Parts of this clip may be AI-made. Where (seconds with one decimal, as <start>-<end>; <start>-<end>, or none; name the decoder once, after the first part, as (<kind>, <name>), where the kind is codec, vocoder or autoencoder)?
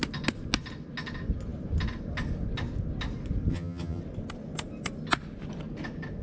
3.5-4.0 (vocoder, HiFi-GAN)